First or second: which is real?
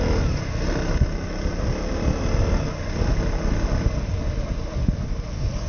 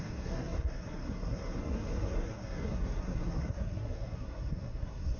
first